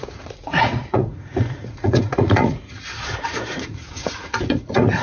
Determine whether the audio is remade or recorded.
remade